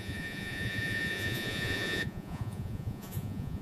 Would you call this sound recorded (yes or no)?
no